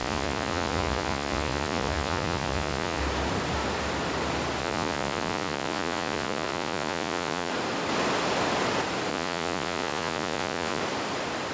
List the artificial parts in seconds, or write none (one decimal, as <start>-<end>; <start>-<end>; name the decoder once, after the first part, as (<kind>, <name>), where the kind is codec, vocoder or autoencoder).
0.0-3.0 (vocoder, Vocos); 4.6-7.5; 9.1-10.8